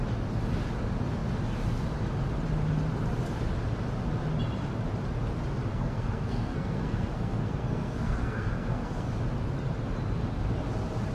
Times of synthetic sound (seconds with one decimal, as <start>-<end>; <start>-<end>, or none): 5.7-9.1